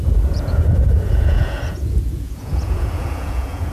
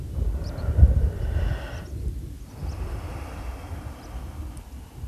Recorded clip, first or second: second